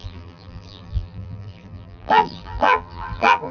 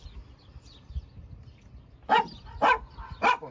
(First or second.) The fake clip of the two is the first